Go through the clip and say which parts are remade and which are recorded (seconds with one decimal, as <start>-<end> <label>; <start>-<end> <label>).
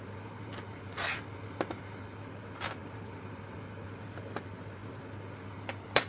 0.0-6.1 recorded